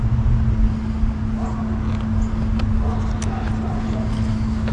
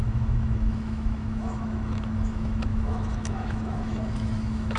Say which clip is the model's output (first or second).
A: second